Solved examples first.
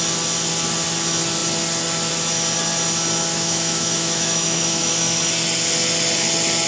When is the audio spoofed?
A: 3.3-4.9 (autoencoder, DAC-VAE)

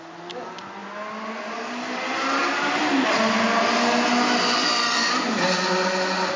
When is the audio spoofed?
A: none